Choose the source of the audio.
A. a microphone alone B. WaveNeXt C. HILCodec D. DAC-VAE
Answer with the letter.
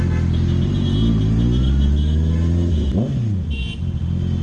A